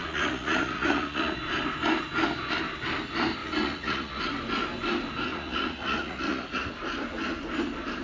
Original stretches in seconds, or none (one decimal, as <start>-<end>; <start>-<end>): 1.4-3.4; 4.2-5.3; 6.7-8.0